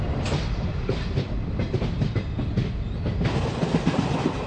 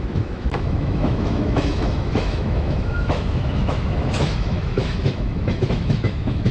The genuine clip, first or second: first